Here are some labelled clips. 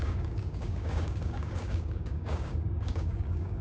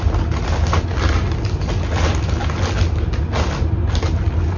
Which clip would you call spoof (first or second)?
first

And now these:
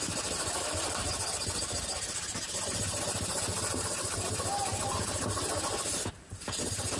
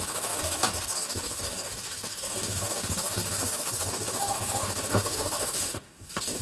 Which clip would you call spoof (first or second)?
second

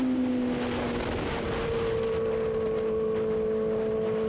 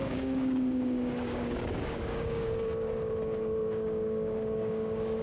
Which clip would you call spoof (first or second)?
second